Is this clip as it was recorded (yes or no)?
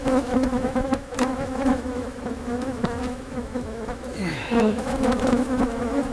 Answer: no